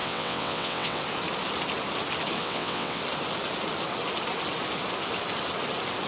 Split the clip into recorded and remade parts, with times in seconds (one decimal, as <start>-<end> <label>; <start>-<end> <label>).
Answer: 0.0-1.0 remade; 1.0-2.4 recorded; 2.4-3.0 remade; 3.0-6.1 recorded

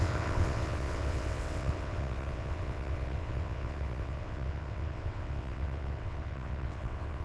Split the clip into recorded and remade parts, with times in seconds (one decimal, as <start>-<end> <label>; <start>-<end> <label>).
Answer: 0.0-7.2 remade

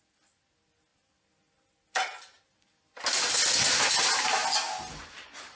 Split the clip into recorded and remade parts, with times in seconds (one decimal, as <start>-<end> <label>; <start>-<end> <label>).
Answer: 0.0-5.6 recorded

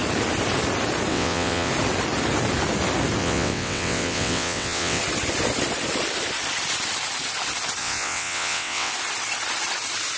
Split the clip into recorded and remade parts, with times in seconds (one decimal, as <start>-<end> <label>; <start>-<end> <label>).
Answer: 0.0-1.1 recorded; 1.1-1.7 remade; 1.7-3.2 recorded; 3.2-5.0 remade; 5.0-7.8 recorded; 7.8-8.9 remade; 8.9-10.2 recorded

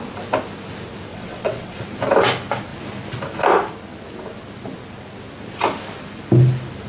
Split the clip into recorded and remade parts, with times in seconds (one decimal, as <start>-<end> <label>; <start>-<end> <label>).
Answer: 0.0-1.1 recorded; 1.1-1.8 remade; 1.8-6.9 recorded

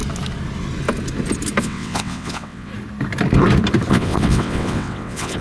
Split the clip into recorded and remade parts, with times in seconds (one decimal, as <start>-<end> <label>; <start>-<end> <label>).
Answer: 0.0-1.6 recorded; 1.6-2.7 remade; 2.7-3.9 recorded; 3.9-5.4 remade

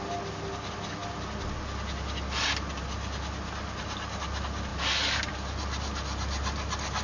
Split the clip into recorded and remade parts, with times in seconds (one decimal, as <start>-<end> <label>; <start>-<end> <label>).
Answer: 0.0-7.0 recorded